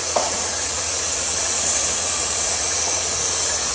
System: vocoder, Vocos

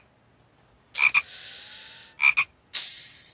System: none